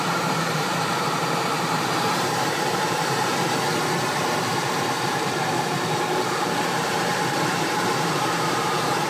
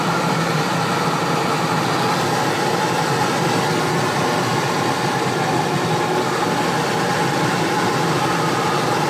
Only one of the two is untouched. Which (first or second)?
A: second